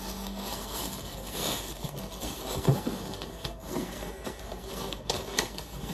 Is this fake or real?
fake